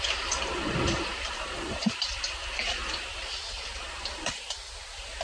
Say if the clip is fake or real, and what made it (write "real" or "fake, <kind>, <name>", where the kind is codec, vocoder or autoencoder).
fake, vocoder, BigVGAN v2